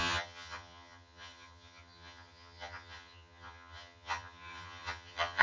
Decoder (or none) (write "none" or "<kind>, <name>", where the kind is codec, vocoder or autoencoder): vocoder, HiFi-GAN